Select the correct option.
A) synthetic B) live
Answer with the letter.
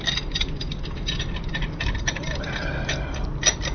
B